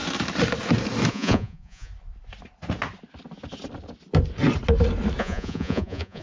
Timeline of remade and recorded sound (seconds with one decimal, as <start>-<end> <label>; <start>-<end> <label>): 0.0-1.1 recorded; 1.1-1.9 remade; 1.9-5.2 recorded; 5.2-6.2 remade